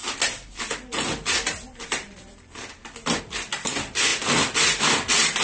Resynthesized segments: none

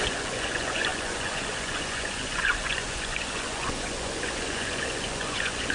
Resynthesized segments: 0.0-5.7

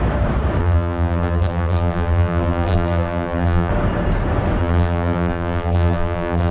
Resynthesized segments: 0.6-3.7; 4.6-6.5

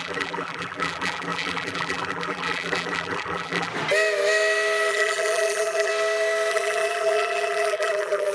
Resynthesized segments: 0.0-3.7; 4.9-5.9; 6.5-8.3